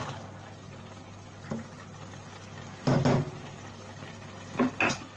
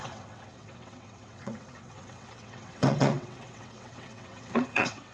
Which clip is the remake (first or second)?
second